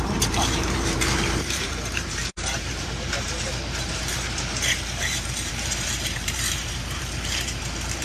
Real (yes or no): no